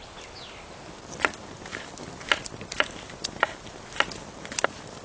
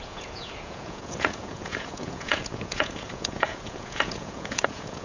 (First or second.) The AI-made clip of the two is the second